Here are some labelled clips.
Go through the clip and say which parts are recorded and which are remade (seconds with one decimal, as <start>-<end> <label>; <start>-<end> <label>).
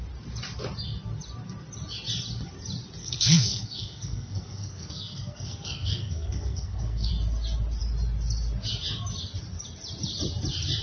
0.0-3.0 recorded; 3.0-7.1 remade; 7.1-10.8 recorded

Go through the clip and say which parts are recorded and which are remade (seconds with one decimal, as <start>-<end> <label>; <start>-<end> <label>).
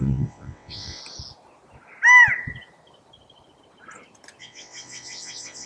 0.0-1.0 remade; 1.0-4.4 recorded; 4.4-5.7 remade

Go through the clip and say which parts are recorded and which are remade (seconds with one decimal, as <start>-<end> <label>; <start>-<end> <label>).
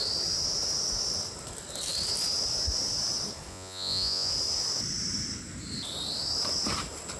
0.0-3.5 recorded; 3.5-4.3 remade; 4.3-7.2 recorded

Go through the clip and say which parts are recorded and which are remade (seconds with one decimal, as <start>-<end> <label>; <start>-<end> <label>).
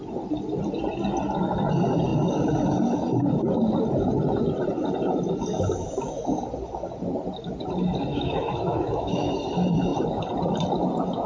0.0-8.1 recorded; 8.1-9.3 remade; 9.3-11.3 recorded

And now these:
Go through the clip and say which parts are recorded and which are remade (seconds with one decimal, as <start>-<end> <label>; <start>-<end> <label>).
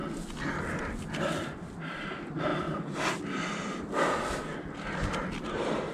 0.0-2.5 recorded; 2.5-3.1 remade; 3.1-5.9 recorded